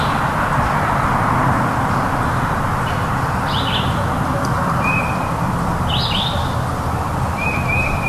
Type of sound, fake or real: fake